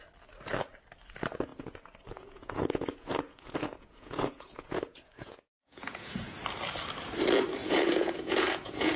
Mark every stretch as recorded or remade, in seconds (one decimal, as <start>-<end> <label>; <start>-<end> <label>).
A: 0.0-1.5 recorded; 1.5-6.4 remade; 6.4-7.6 recorded; 7.6-9.0 remade